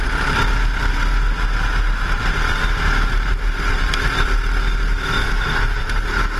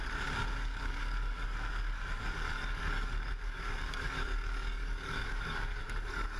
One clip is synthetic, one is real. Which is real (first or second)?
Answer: first